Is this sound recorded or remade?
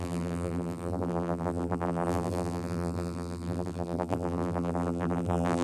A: remade